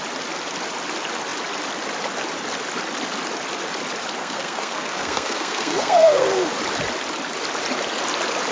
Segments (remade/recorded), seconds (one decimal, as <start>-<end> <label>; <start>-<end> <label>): 0.0-4.2 recorded; 4.2-6.5 remade; 6.5-8.5 recorded